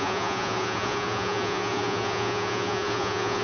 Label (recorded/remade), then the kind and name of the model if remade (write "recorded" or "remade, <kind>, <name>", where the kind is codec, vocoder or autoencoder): remade, vocoder, Vocos